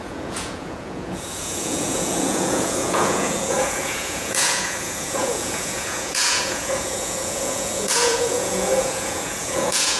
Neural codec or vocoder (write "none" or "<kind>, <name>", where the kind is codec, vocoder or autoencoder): vocoder, Vocos